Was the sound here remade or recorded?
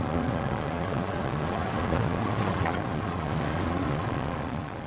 remade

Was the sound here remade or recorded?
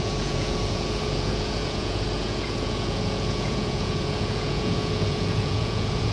remade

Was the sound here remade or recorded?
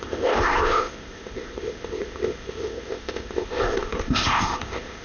remade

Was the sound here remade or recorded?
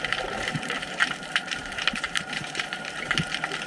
remade